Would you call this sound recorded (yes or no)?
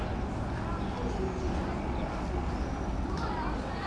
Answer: yes